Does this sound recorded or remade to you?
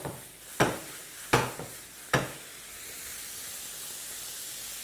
recorded